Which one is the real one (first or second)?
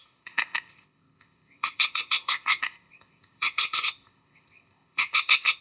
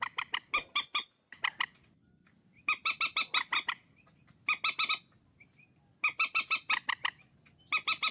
second